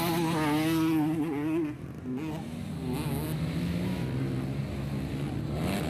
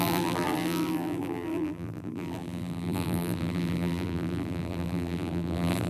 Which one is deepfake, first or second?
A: second